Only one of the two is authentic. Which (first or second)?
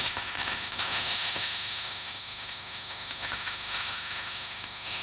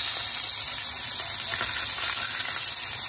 second